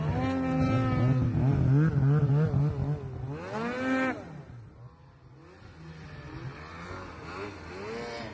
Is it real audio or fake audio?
real